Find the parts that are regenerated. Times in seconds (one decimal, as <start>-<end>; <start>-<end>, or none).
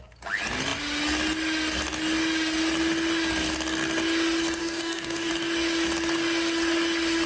4.6-5.3